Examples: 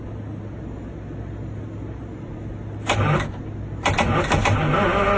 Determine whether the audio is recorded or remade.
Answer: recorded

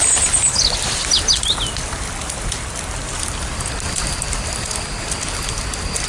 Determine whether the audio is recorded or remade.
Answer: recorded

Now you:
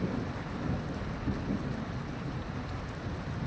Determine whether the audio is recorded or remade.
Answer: recorded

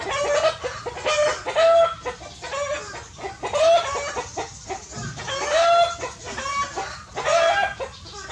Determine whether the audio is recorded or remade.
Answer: recorded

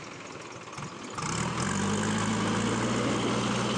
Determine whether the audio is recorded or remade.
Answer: recorded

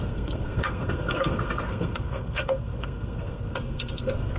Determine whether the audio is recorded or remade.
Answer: remade